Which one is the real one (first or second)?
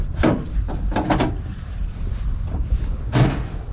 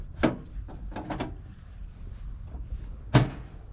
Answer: second